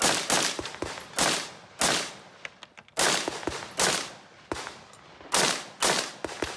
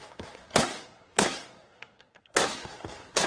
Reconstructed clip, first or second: second